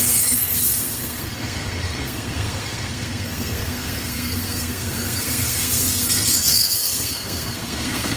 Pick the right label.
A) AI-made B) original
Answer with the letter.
A